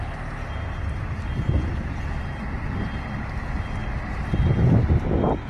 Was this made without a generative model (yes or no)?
yes